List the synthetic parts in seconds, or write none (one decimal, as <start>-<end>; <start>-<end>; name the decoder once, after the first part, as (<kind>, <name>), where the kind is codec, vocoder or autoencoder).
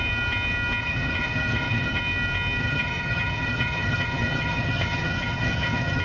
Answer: 0.8-2.0 (vocoder, HiFi-GAN); 2.6-6.0